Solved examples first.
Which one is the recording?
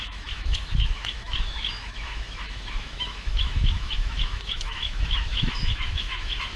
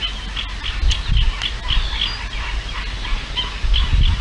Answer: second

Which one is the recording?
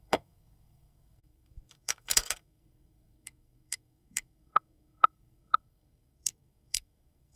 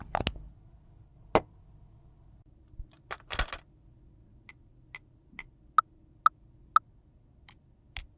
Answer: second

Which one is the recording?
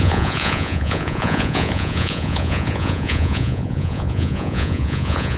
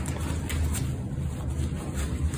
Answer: second